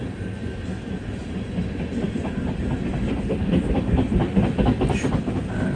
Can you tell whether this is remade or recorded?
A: recorded